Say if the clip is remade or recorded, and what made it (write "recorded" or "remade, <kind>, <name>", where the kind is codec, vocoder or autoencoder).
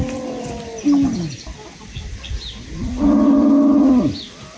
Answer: recorded